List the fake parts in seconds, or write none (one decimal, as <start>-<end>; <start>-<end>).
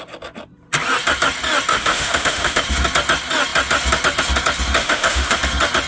1.7-2.6; 4.8-5.4